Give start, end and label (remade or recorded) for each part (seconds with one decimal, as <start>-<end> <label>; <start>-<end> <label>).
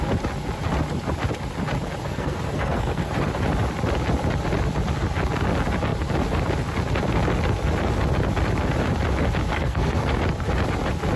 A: 0.0-2.0 recorded; 2.0-3.1 remade; 3.1-9.5 recorded; 9.5-10.2 remade; 10.2-11.2 recorded